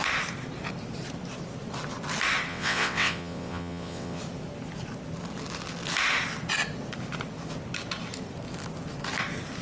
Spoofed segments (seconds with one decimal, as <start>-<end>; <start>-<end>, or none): 2.5-4.2